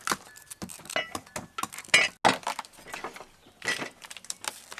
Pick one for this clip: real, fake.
real